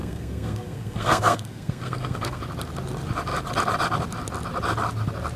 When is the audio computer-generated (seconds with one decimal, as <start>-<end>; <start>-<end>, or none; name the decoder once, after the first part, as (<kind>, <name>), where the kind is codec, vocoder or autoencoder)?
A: 0.0-2.4 (codec, SNAC)